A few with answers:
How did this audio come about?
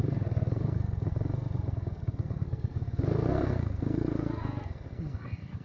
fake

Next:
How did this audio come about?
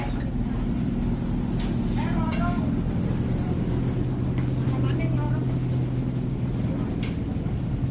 real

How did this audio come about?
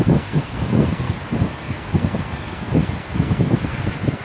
fake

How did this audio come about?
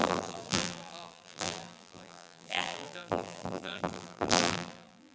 fake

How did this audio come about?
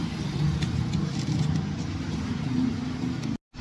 real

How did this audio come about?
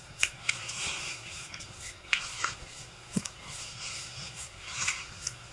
fake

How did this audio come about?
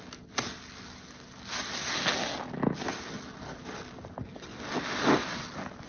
real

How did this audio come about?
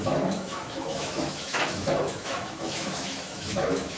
fake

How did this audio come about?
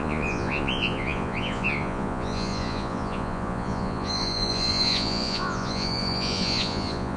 fake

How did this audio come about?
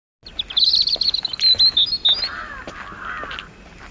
real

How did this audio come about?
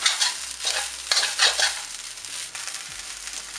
real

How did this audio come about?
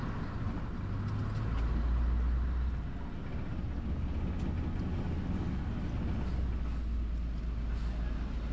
real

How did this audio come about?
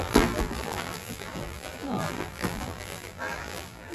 fake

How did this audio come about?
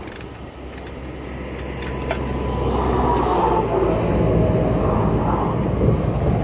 real